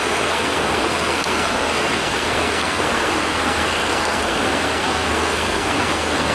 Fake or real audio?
fake